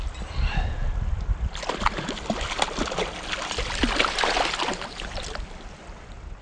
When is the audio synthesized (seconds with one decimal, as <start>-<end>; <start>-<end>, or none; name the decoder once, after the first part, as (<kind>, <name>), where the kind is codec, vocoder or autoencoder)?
none